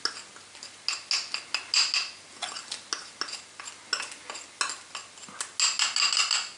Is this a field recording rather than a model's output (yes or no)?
yes